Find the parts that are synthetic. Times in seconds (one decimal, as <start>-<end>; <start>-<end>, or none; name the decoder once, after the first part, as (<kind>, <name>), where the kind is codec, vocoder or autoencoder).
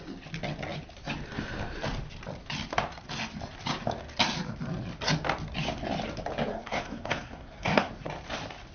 6.5-7.9 (codec, SNAC)